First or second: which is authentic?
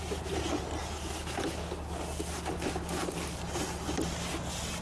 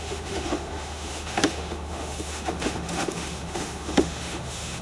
first